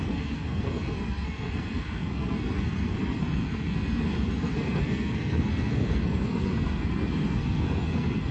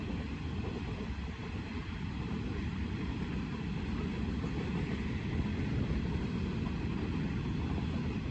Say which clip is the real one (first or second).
second